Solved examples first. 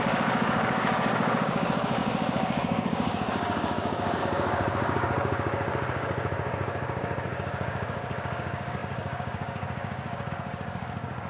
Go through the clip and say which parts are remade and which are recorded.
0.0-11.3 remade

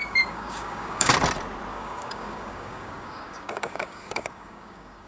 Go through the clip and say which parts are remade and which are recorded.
0.0-1.1 remade; 1.1-1.7 recorded; 1.7-5.1 remade

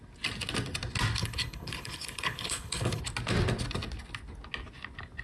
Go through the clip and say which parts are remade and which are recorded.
0.0-1.2 recorded; 1.2-3.0 remade; 3.0-5.2 recorded